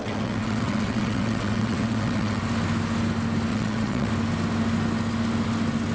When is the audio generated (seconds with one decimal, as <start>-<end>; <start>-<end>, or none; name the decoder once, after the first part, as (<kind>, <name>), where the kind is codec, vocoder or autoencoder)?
0.0-2.4 (vocoder, WaveNeXt); 3.5-4.1